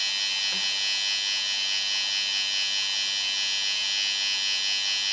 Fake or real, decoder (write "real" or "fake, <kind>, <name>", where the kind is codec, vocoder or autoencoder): real